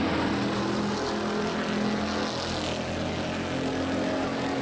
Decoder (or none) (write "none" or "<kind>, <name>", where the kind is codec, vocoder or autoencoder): none